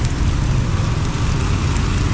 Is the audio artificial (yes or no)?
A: no